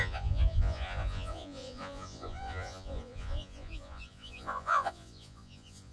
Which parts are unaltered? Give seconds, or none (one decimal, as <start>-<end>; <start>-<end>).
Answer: none